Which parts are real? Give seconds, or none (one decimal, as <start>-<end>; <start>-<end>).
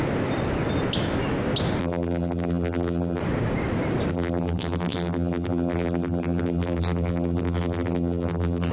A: 0.0-1.8; 3.2-4.1